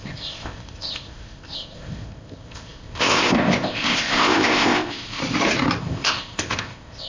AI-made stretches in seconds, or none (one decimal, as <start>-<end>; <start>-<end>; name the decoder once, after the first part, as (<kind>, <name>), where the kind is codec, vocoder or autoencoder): 0.0-5.2 (codec, ZipCodec); 5.8-7.1